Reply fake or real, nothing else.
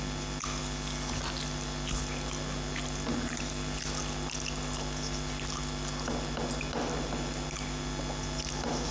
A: real